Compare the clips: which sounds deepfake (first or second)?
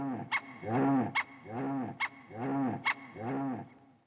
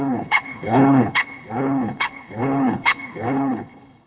second